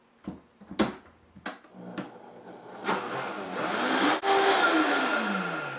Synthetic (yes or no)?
no